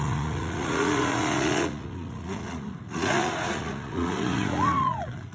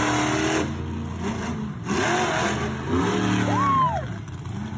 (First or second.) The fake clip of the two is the first